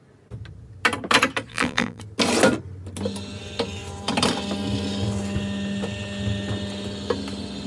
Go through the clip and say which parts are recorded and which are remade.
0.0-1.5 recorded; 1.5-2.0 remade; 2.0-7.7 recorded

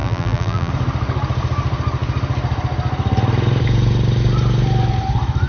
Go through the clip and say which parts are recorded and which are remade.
0.0-0.7 remade; 0.7-5.5 recorded

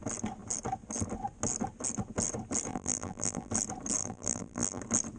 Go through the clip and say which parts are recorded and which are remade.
0.0-2.7 recorded; 2.7-3.5 remade; 3.5-4.0 recorded; 4.0-4.8 remade; 4.8-5.2 recorded

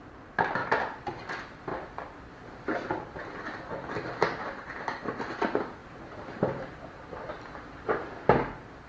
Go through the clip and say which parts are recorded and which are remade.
0.0-0.6 recorded; 0.6-1.1 remade; 1.1-1.7 recorded; 1.7-2.3 remade; 2.3-3.7 recorded; 3.7-4.4 remade; 4.4-5.8 recorded; 5.8-7.9 remade; 7.9-8.9 recorded

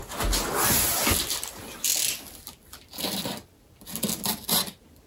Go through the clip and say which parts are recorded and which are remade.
0.0-5.1 recorded

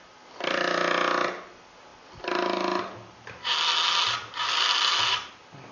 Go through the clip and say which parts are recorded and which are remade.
0.0-5.7 recorded

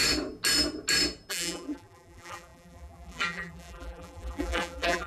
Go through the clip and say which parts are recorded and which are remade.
0.0-1.3 recorded; 1.3-5.1 remade

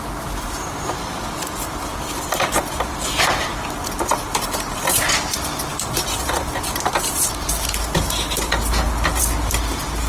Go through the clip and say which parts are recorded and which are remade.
0.0-10.1 recorded